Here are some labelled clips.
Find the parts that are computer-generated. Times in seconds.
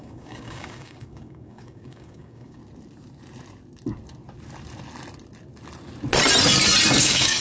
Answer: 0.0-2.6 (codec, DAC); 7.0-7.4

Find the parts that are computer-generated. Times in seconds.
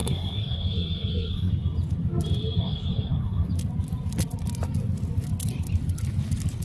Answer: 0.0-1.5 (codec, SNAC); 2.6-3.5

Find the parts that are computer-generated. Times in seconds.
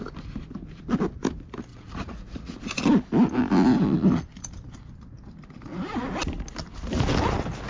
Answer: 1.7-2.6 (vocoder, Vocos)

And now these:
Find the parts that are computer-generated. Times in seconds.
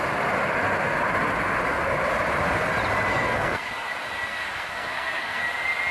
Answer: 3.1-3.7 (codec, SNAC); 4.3-5.4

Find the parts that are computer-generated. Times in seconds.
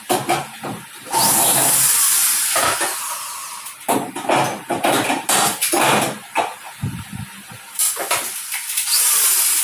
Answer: none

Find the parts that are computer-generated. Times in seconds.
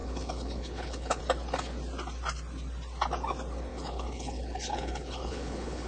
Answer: 0.0-1.2 (codec, HILCodec); 3.7-5.9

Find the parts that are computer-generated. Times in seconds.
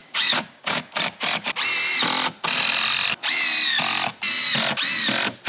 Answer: 0.0-0.8 (codec, DAC)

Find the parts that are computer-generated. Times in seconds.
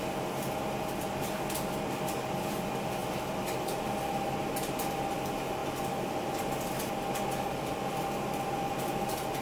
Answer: 3.0-3.9 (vocoder, BigVGAN v2)